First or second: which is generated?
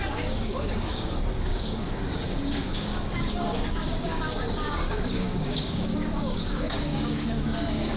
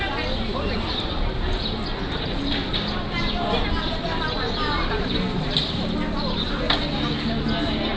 first